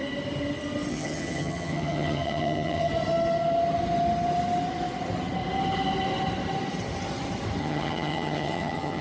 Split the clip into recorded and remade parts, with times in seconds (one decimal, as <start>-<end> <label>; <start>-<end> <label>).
0.0-0.9 recorded; 0.9-2.9 remade; 2.9-7.6 recorded; 7.6-9.0 remade